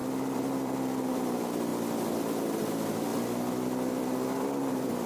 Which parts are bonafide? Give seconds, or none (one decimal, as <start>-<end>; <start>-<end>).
1.7-2.6; 3.1-3.9

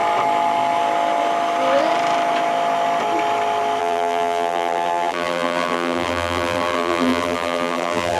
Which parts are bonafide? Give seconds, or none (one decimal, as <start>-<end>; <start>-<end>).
0.0-3.8